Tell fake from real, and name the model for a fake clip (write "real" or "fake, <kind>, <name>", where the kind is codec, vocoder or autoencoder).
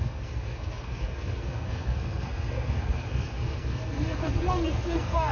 fake, codec, SNAC